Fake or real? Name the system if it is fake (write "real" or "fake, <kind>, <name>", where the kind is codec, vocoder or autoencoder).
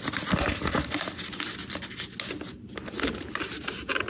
real